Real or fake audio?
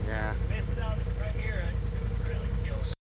fake